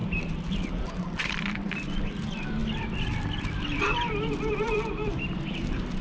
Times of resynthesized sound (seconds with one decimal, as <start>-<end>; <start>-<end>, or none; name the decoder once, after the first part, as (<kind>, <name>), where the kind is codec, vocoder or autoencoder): 1.3-6.0 (vocoder, BigVGAN v2)